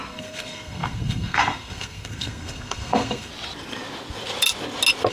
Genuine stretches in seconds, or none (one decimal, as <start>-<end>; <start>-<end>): 3.3-5.1